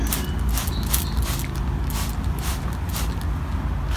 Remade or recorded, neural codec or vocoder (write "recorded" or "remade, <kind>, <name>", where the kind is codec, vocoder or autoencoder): recorded